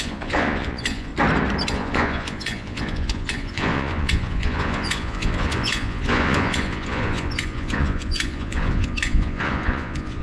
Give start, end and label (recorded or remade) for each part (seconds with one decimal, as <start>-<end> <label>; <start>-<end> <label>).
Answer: 0.0-1.1 remade; 1.1-1.7 recorded; 1.7-10.2 remade